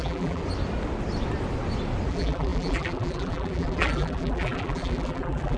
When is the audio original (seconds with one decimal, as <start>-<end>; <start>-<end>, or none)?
0.4-2.1